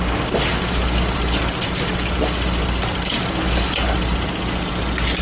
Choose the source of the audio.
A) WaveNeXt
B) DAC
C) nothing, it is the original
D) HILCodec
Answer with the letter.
C